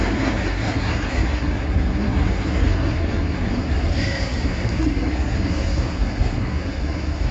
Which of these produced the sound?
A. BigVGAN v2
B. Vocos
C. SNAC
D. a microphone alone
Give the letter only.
C